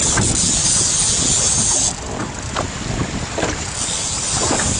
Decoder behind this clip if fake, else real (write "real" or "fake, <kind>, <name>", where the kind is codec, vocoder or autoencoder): real